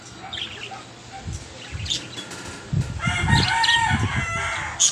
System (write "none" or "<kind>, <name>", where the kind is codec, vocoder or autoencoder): none